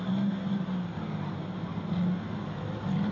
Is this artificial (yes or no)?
no